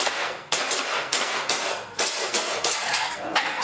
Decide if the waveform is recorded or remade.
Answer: remade